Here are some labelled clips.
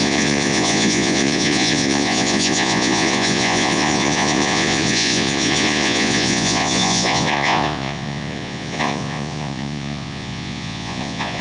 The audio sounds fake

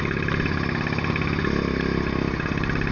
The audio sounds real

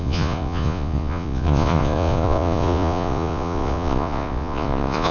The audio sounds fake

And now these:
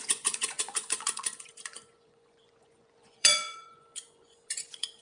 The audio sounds fake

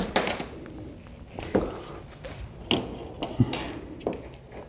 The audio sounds real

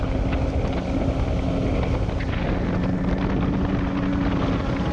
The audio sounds real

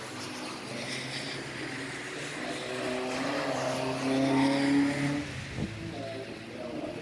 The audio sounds real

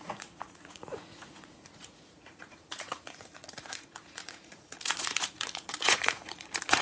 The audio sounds fake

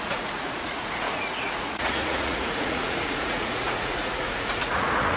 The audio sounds fake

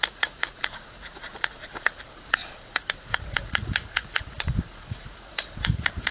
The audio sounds fake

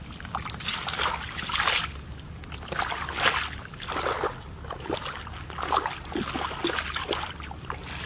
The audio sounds real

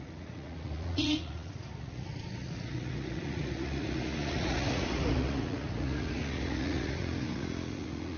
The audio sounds fake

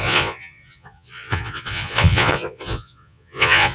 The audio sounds fake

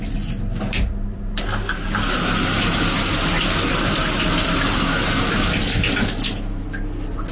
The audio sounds real